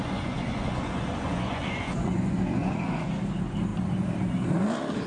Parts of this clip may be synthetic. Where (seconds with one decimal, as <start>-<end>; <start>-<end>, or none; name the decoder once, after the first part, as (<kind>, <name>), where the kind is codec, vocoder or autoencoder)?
0.0-3.1 (vocoder, Vocos)